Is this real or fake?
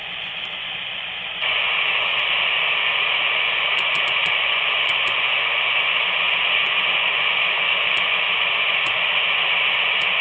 fake